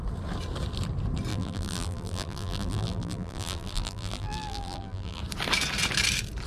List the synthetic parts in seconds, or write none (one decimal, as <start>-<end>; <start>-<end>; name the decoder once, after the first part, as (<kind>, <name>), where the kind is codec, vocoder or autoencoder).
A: 1.3-5.2 (vocoder, BigVGAN v2)